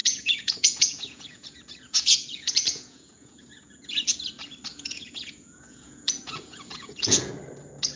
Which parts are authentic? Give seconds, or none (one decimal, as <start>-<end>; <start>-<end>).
4.0-4.7; 7.3-8.0